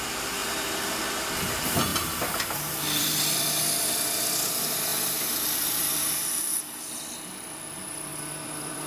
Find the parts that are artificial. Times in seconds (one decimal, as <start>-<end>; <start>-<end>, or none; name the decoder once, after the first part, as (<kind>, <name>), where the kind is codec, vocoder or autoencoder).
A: 0.4-1.0 (vocoder, BigVGAN v2); 1.9-3.6; 8.1-8.9